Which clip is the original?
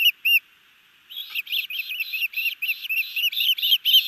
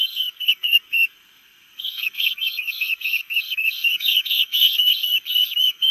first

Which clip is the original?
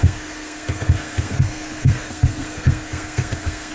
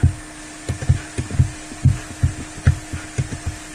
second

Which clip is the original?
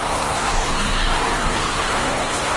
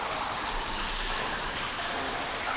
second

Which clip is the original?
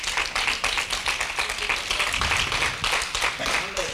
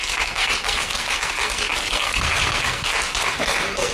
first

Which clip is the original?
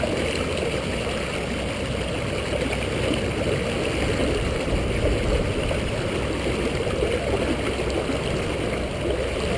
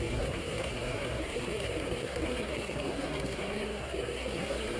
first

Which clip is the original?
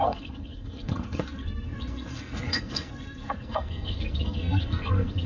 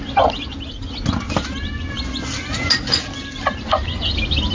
second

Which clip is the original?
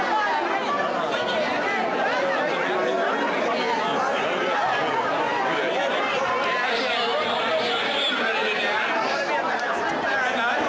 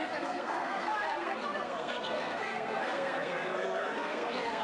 first